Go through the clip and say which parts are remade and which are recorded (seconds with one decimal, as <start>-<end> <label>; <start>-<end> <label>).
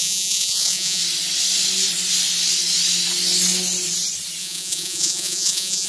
0.0-1.0 remade; 1.0-4.4 recorded; 4.4-5.9 remade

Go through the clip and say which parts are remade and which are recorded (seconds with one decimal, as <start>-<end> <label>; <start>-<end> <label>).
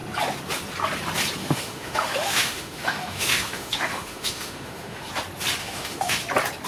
0.0-1.4 recorded; 1.4-5.1 remade; 5.1-5.6 recorded; 5.6-6.2 remade; 6.2-6.7 recorded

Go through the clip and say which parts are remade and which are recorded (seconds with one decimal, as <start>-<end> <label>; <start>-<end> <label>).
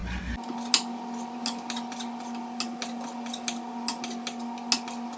0.0-5.2 recorded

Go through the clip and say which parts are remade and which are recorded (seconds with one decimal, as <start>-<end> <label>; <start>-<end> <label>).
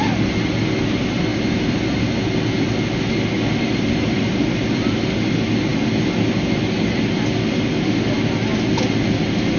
0.0-9.6 recorded